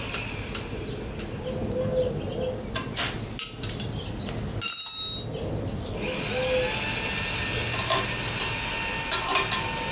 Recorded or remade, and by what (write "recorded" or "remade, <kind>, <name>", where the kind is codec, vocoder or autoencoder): recorded